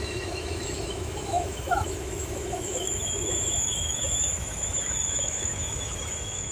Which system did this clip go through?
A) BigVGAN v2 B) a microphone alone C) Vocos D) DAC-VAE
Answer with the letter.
D